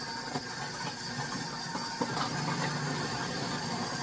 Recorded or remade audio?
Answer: recorded